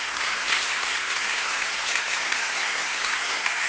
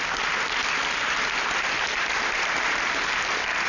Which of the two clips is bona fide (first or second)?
second